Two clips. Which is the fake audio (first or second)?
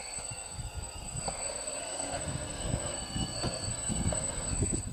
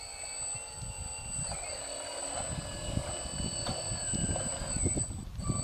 first